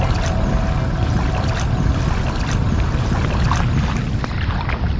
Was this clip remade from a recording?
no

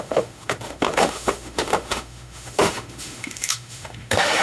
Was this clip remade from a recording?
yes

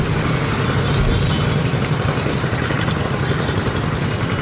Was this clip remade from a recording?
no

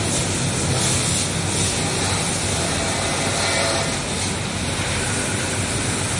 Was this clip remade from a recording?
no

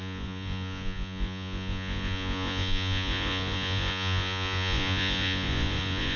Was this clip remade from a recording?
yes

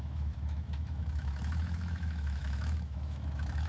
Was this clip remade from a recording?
yes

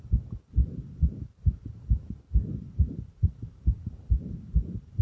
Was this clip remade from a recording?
yes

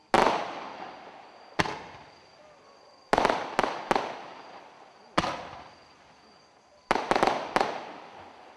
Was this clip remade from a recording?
no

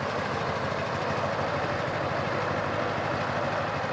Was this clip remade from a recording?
no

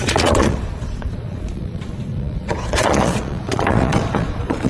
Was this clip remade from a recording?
yes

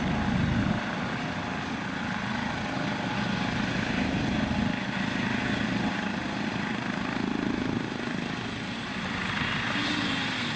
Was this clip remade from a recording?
no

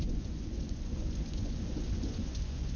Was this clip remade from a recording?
yes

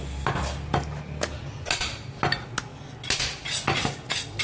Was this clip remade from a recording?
no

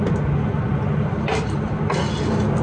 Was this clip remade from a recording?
no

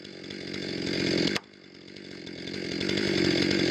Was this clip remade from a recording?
no